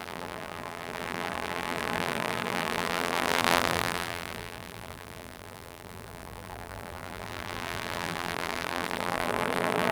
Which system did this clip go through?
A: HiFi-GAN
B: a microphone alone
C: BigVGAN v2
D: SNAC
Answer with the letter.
C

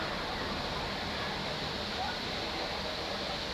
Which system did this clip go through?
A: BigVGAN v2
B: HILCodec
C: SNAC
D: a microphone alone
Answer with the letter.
D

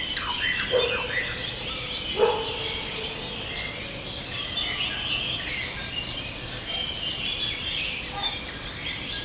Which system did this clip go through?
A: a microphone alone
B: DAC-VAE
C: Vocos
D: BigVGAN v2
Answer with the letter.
A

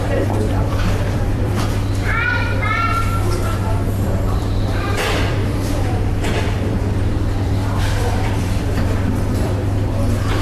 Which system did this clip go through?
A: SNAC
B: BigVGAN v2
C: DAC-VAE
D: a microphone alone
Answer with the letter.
B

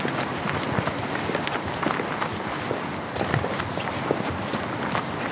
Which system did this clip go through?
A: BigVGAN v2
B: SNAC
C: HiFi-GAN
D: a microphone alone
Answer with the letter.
D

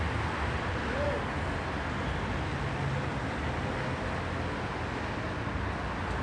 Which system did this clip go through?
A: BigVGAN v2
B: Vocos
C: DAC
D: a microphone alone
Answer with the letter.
D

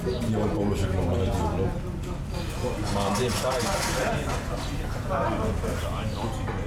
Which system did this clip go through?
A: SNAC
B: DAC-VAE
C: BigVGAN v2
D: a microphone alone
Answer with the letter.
D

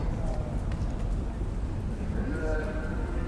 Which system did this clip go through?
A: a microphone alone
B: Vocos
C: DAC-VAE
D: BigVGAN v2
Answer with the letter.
D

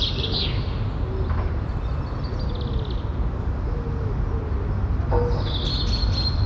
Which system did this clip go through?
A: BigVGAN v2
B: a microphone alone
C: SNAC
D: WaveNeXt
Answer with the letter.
B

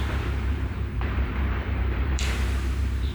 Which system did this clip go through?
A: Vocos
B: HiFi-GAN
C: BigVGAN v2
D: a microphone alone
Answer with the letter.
C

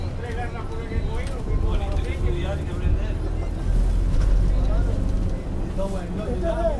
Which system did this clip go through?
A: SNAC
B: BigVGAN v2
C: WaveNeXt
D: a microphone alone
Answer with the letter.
D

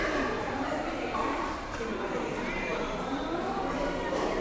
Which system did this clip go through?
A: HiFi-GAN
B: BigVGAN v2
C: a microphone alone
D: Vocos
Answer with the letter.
B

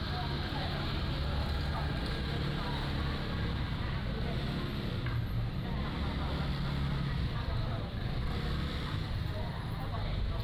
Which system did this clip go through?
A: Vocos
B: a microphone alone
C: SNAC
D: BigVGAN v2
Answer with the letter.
B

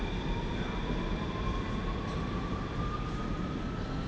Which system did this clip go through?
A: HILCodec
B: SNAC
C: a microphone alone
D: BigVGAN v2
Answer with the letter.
C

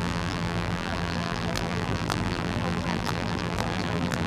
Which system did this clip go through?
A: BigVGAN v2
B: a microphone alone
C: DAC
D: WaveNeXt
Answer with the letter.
A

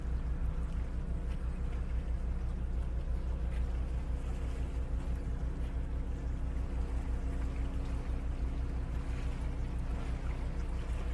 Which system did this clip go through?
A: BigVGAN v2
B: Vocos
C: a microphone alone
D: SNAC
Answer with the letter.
C